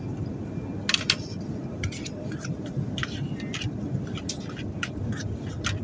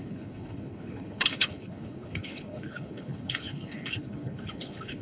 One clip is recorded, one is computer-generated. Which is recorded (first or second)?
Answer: first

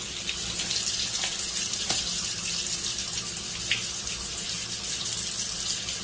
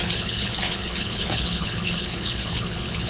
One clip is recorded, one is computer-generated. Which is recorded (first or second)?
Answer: first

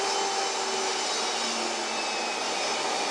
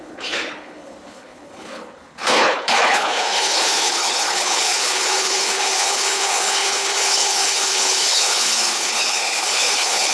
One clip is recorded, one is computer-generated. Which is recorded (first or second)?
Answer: first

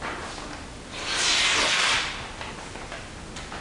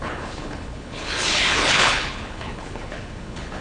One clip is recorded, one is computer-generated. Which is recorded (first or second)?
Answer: first